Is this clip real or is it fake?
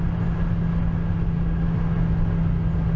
real